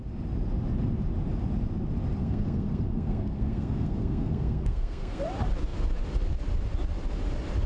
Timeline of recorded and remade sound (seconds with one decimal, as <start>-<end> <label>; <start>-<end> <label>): 0.0-2.2 recorded; 2.2-5.2 remade; 5.2-7.7 recorded